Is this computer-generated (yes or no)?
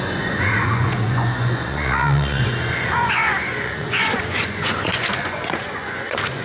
yes